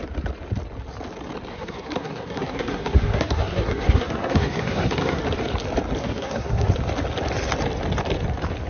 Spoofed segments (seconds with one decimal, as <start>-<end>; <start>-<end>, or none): 1.5-5.2; 6.0-6.7